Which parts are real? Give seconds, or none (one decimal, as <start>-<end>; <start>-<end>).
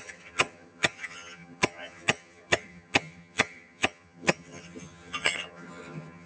none